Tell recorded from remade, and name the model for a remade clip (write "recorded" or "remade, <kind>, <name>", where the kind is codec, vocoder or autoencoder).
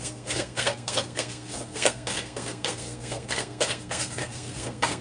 remade, codec, SNAC